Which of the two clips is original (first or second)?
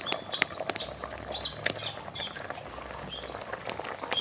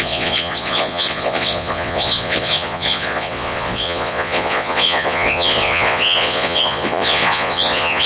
first